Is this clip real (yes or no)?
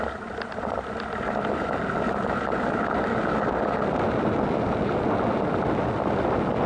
yes